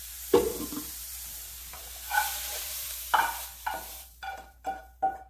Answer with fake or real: fake